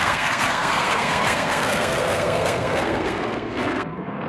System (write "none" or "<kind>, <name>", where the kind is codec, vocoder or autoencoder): codec, SNAC